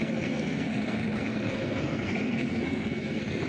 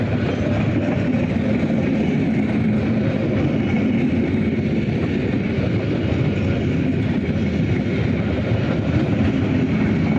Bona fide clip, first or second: second